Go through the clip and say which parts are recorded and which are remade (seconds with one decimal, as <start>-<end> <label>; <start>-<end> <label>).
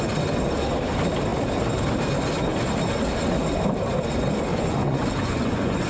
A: 0.0-4.5 recorded; 4.5-5.9 remade